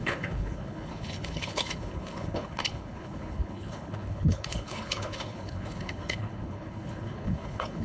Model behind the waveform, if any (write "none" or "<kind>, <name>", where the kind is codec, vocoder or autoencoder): codec, HILCodec